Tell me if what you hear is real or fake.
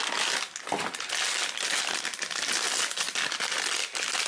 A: real